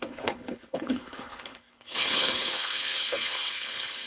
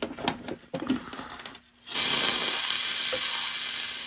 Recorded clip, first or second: second